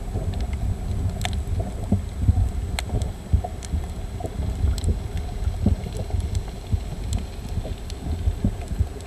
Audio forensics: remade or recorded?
recorded